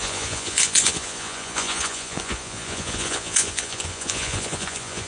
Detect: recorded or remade remade